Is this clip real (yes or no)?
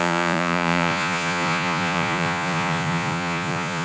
no